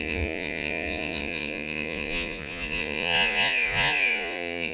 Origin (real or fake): fake